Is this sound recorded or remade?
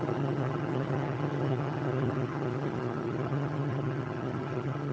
remade